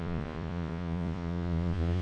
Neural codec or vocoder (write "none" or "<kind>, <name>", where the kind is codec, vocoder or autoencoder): vocoder, Vocos